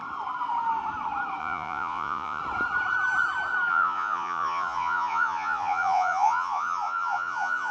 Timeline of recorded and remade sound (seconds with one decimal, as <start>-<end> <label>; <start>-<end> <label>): 0.0-1.4 recorded; 1.4-2.4 remade; 2.4-3.7 recorded; 3.7-7.7 remade